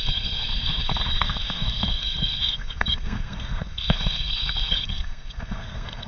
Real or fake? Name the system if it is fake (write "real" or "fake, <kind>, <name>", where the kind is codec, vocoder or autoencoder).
fake, codec, SNAC